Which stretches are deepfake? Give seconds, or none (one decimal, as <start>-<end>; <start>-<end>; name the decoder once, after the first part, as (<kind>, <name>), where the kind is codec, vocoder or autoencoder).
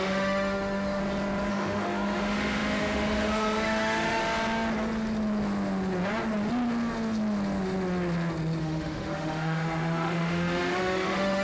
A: 0.0-1.0 (autoencoder, DAC-VAE); 1.5-4.2; 8.6-11.4